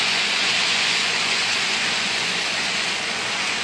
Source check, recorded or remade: remade